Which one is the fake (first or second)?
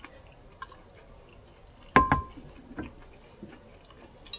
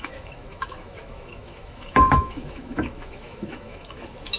second